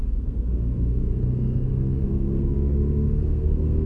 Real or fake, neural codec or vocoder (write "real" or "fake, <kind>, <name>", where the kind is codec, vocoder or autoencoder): fake, codec, SNAC